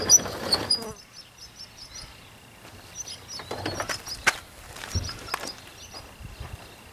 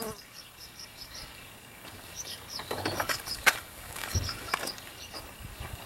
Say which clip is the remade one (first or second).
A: second